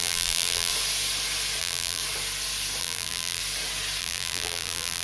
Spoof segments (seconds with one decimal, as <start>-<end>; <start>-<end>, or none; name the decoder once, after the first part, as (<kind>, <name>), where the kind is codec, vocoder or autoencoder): 0.0-0.7 (vocoder, BigVGAN v2); 1.6-2.0; 2.8-3.4; 4.0-5.0